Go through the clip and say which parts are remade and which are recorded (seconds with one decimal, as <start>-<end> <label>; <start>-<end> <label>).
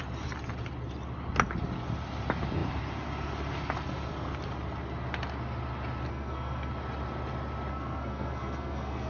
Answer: 0.0-6.1 recorded; 6.1-6.7 remade; 6.7-7.7 recorded; 7.7-9.1 remade